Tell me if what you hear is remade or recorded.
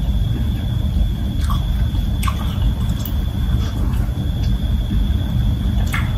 recorded